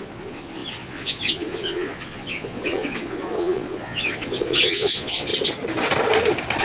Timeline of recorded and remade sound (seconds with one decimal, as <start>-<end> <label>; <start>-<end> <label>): 0.0-5.3 remade; 5.3-6.6 recorded